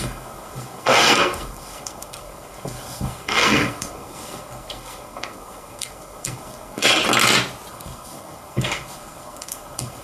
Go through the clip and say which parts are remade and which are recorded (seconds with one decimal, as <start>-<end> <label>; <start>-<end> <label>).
0.0-7.0 remade; 7.0-7.7 recorded; 7.7-10.0 remade